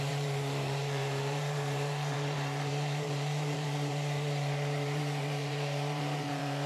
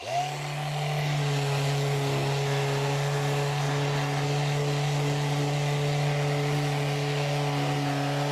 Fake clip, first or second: first